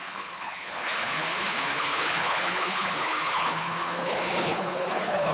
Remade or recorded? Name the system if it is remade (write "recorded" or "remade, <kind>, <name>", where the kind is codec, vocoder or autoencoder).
remade, codec, HILCodec